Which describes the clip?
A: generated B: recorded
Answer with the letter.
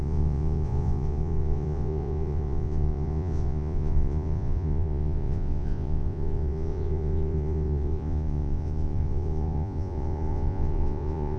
A